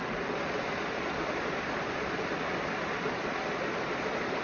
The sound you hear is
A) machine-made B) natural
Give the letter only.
B